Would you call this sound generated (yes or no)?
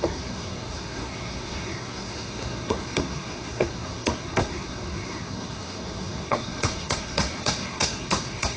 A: yes